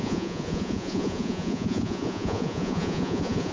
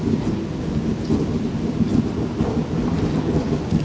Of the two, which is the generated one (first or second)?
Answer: first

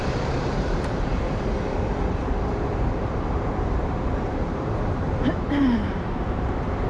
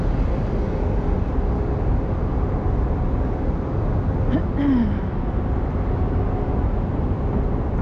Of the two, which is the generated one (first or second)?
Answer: first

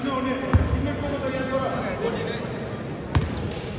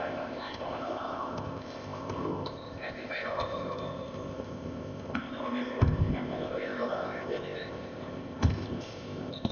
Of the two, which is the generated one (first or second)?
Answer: second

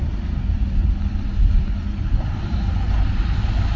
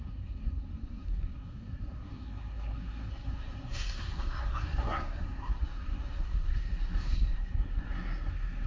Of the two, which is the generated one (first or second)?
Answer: second